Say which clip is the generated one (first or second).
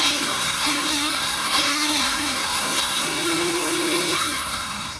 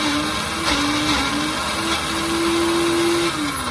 first